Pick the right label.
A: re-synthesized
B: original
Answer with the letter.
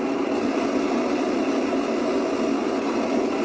B